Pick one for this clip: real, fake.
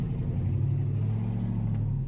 real